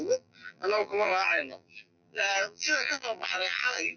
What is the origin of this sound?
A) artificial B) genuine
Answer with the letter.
A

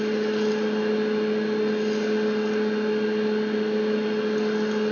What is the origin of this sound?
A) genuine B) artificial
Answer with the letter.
A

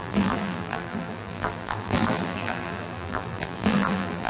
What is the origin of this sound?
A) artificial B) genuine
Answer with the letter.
A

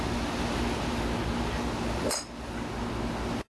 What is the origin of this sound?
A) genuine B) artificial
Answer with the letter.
A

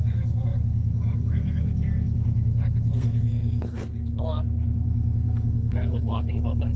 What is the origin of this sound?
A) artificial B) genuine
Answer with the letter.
A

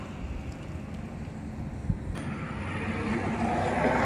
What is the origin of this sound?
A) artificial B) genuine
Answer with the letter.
B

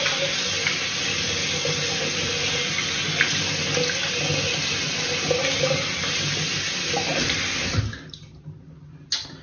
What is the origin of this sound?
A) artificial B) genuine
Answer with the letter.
B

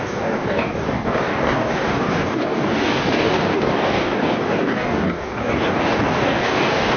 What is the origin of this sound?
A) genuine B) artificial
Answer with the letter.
B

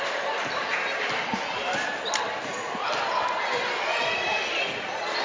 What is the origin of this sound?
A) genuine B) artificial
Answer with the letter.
A